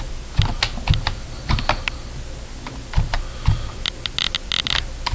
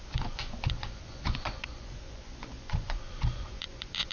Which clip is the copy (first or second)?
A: second